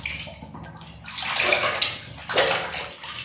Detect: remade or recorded recorded